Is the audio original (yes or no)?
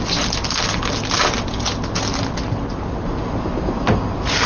yes